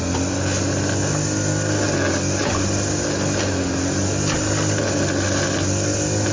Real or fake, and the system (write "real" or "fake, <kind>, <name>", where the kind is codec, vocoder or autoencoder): real